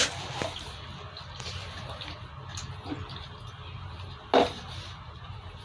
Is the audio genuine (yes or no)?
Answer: yes